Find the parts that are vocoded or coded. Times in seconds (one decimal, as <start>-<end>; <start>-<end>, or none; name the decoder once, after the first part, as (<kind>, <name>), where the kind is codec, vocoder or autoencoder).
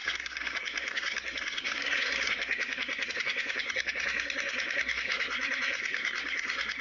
0.0-6.8 (codec, SNAC)